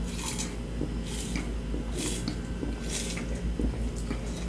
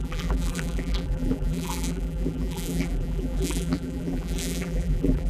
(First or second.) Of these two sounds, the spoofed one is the second